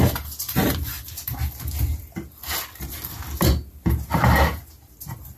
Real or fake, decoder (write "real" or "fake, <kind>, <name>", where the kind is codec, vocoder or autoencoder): real